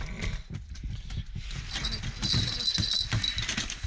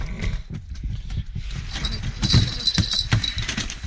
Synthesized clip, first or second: second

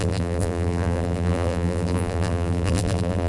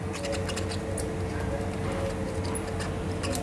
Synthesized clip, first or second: first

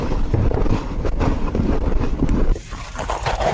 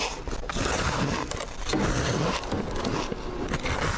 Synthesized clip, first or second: first